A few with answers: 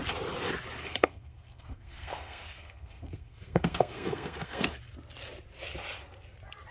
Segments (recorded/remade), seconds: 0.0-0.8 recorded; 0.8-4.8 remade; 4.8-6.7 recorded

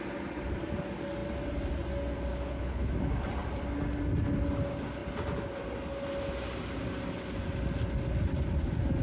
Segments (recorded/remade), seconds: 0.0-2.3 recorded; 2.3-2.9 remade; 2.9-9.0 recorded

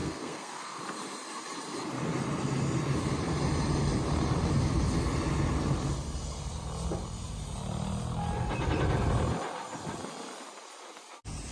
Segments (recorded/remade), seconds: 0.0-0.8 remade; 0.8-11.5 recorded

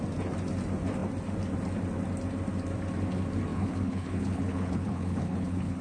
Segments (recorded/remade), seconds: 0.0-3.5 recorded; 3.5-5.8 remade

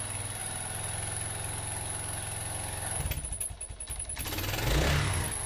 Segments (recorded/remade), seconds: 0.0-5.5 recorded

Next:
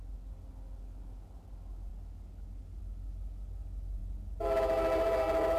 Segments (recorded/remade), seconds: 0.0-5.6 recorded

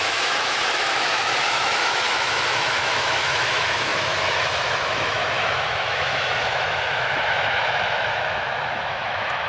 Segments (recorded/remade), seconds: 0.0-9.5 remade

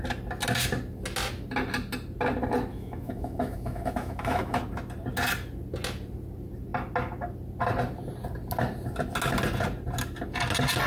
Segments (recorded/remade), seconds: 0.0-2.7 recorded; 2.7-4.6 remade; 4.6-10.9 recorded